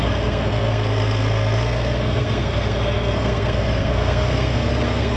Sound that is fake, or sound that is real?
fake